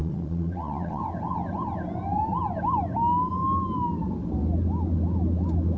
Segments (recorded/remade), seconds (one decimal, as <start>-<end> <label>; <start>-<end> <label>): 0.0-1.0 remade; 1.0-5.8 recorded